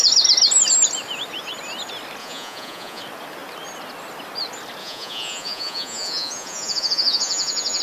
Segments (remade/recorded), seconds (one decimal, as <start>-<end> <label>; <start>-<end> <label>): 0.0-2.2 recorded; 2.2-3.0 remade; 3.0-4.8 recorded; 4.8-7.8 remade